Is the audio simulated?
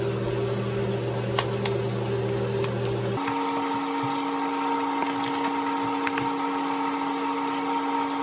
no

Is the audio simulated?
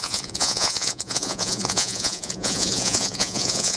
yes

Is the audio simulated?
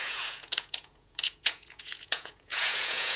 yes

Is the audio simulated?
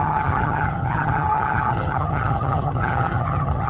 yes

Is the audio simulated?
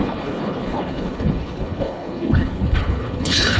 yes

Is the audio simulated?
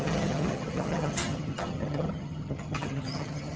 yes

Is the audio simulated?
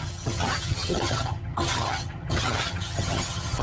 yes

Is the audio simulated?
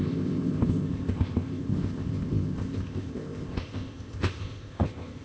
yes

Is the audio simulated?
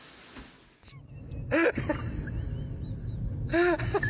no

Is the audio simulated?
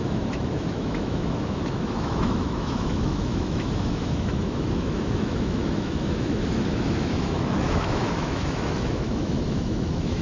yes